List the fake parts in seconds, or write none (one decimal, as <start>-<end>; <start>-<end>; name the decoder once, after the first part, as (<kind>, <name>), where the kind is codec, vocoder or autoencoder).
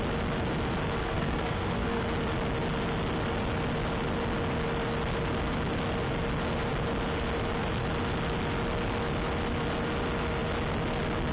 1.0-2.0 (codec, SNAC)